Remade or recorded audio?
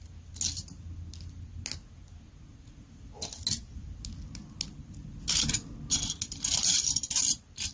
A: recorded